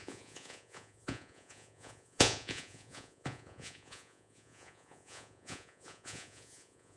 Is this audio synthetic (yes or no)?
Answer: yes